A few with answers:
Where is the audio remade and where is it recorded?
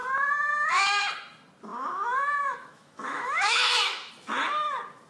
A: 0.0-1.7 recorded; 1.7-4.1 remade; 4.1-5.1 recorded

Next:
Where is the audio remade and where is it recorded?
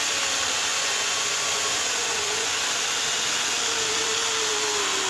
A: 0.0-0.7 recorded; 0.7-2.7 remade; 2.7-5.1 recorded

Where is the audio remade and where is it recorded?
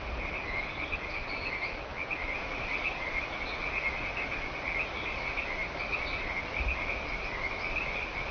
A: 0.0-8.3 recorded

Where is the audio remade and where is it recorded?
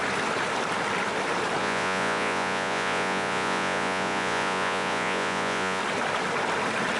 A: 0.0-1.6 recorded; 1.6-5.8 remade; 5.8-7.0 recorded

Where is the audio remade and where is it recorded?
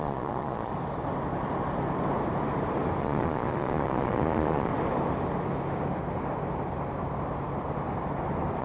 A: 0.0-0.7 remade; 0.7-3.0 recorded; 3.0-4.7 remade; 4.7-8.6 recorded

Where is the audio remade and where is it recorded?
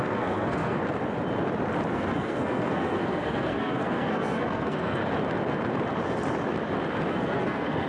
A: 0.0-0.8 remade; 0.8-1.9 recorded; 1.9-5.0 remade; 5.0-7.1 recorded; 7.1-7.9 remade